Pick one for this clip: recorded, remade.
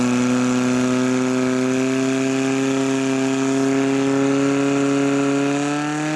recorded